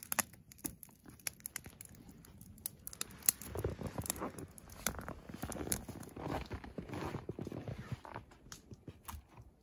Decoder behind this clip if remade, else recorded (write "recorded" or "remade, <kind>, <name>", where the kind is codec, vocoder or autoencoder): recorded